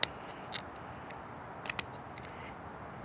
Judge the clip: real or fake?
real